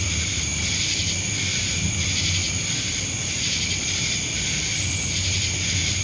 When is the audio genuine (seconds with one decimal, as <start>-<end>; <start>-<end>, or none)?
0.0-6.0